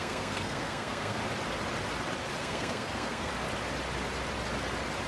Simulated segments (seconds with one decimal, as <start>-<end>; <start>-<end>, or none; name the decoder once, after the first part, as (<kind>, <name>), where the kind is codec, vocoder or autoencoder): 0.0-1.2 (codec, SNAC); 2.4-3.3